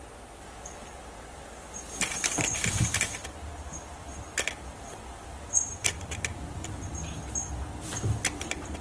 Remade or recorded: remade